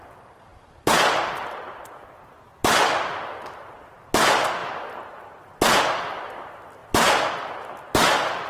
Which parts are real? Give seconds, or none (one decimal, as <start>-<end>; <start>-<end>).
0.0-8.5